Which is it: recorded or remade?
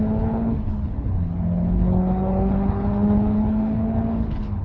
remade